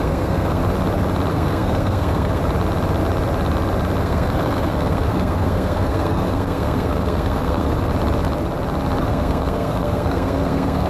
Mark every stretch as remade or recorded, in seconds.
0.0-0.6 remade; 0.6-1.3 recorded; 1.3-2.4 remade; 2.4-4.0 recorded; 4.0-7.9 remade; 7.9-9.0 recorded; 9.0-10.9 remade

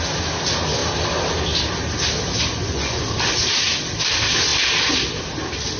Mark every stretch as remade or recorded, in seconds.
0.0-2.5 recorded; 2.5-3.0 remade; 3.0-5.8 recorded

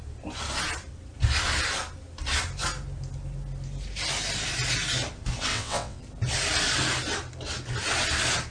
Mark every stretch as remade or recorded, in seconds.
0.0-5.5 recorded; 5.5-6.0 remade; 6.0-8.5 recorded

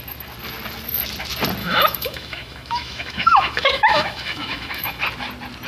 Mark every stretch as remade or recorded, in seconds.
0.0-1.6 recorded; 1.6-5.0 remade; 5.0-5.7 recorded

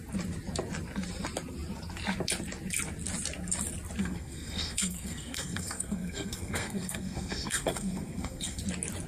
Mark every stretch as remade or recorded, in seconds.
0.0-4.0 recorded; 4.0-8.6 remade; 8.6-9.1 recorded

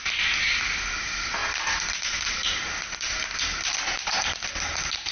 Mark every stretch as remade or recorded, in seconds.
0.0-5.1 recorded